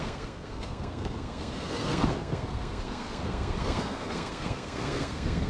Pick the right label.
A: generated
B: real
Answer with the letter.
A